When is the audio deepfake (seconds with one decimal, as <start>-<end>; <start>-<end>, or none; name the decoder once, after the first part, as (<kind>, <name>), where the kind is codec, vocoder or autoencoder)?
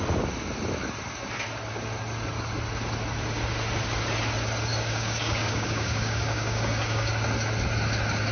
4.7-7.1 (codec, DAC)